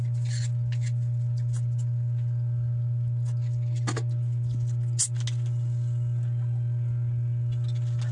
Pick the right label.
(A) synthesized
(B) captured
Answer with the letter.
B